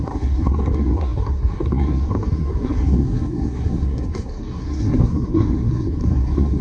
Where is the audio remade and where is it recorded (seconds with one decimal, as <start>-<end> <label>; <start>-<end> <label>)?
0.0-6.6 remade